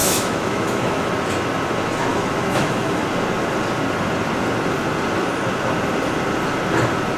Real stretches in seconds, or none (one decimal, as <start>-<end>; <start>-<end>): 1.1-2.1; 3.0-7.2

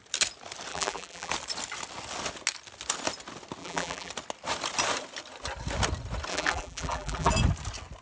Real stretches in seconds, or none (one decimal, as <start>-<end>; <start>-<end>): 0.0-0.7; 1.3-3.6; 4.1-6.3; 7.3-8.0

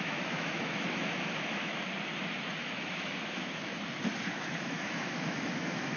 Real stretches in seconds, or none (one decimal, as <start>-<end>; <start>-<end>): 1.8-2.6; 3.7-4.3

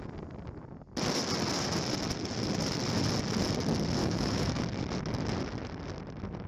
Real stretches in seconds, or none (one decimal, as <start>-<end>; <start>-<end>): 0.0-4.0; 4.6-6.5

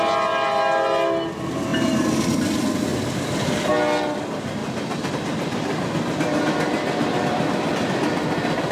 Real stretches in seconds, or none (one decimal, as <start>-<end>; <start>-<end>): 0.0-1.7; 2.3-2.9; 3.7-4.6; 5.1-8.7

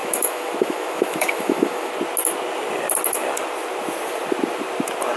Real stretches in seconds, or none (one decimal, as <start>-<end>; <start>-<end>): 1.9-5.2